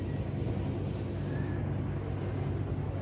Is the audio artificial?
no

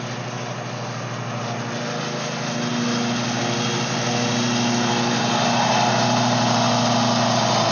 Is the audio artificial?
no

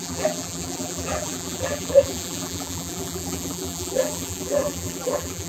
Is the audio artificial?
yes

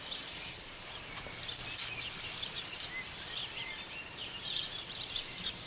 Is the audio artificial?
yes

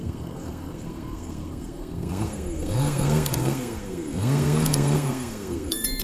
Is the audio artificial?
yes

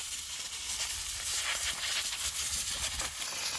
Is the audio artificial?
no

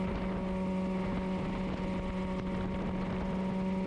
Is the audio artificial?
no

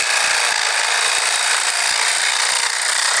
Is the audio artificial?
no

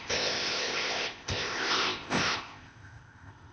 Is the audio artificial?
yes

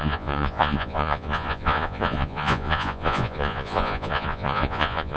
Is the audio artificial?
yes